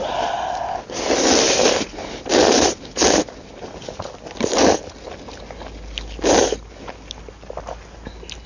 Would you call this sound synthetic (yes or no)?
no